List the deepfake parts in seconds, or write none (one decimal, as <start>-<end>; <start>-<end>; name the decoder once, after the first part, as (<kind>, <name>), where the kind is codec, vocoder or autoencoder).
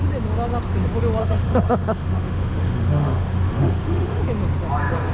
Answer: 1.2-4.2 (autoencoder, DAC-VAE)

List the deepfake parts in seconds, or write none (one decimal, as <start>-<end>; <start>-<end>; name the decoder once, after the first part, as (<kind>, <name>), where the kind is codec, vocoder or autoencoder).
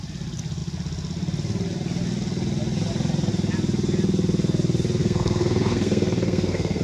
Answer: 5.0-6.8 (codec, SNAC)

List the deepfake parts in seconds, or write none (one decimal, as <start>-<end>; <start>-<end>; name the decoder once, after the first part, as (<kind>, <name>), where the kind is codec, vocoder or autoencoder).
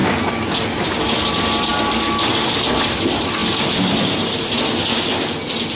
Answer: none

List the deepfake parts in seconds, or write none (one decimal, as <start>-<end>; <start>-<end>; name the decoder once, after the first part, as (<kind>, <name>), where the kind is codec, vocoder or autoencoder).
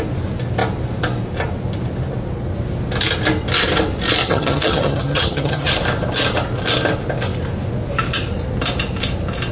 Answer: 4.2-5.7 (vocoder, HiFi-GAN)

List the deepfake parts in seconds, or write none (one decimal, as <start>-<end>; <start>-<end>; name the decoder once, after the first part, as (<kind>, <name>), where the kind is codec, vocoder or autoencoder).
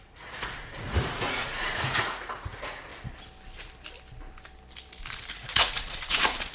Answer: 0.0-2.9 (vocoder, Vocos); 5.3-6.5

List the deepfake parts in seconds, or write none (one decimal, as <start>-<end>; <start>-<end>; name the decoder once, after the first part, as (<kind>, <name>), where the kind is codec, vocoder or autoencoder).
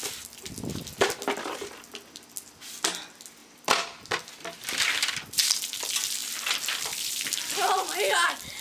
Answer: 0.0-1.7 (vocoder, BigVGAN v2); 3.4-5.8